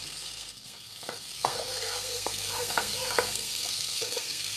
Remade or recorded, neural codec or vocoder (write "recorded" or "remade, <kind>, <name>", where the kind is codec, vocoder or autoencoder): remade, codec, SNAC